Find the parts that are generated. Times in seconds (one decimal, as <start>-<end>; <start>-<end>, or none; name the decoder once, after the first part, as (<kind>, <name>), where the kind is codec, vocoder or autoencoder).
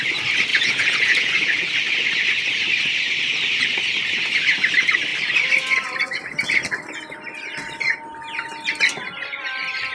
0.5-1.3 (vocoder, Vocos)